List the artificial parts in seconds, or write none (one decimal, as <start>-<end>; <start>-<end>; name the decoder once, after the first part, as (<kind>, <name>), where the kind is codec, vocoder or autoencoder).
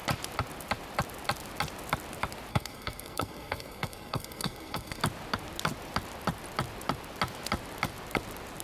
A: 2.5-5.0 (codec, SNAC)